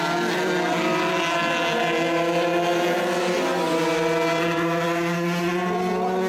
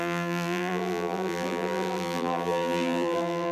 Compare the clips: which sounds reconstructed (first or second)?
second